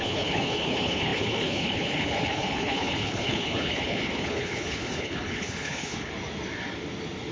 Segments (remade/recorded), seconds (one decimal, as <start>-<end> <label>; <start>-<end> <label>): 0.0-6.1 remade; 6.1-7.3 recorded